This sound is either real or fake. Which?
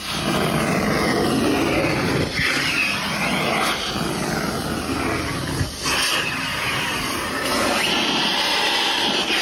real